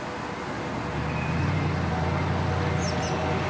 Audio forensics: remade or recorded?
recorded